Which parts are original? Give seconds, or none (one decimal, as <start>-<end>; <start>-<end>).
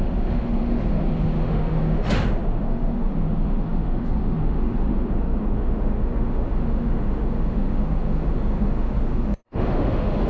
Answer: none